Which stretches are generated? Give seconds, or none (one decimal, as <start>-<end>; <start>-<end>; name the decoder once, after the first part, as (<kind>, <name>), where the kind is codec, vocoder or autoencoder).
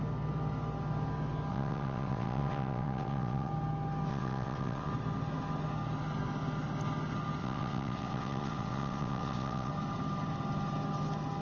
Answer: 1.5-3.5 (vocoder, WaveNeXt); 4.1-4.9; 7.4-9.7